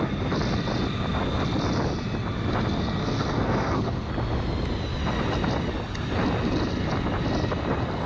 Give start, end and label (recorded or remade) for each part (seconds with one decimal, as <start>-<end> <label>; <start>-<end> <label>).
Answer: 0.0-3.0 recorded; 3.0-4.1 remade; 4.1-8.1 recorded